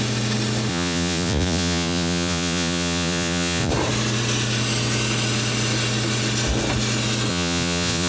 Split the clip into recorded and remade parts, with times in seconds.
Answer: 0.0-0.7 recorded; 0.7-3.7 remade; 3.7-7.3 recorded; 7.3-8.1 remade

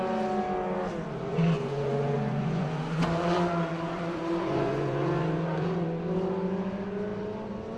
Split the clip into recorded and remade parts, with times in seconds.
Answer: 0.0-1.3 recorded; 1.3-6.0 remade; 6.0-7.8 recorded

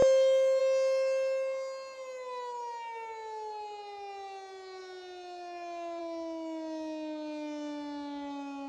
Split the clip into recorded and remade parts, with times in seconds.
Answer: 0.0-8.7 recorded